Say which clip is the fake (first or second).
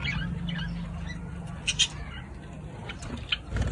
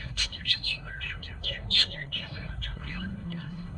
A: second